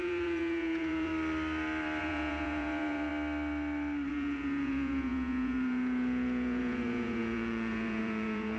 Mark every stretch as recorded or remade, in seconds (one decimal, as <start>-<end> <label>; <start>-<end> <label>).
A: 0.0-1.1 remade; 1.1-2.0 recorded; 2.0-3.1 remade; 3.1-4.1 recorded; 4.1-8.6 remade